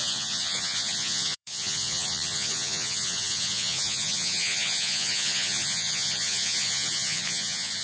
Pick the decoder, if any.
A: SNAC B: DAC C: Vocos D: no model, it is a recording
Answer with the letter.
C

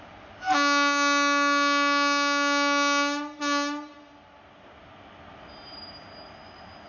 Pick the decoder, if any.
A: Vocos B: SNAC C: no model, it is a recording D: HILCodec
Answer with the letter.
C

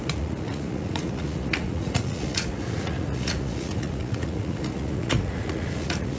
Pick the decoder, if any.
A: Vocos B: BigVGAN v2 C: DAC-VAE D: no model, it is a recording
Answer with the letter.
A